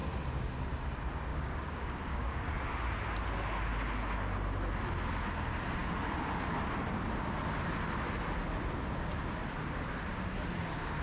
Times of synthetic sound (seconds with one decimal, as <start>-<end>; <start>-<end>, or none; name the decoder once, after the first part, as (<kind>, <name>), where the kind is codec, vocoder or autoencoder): 1.3-2.5 (codec, DAC)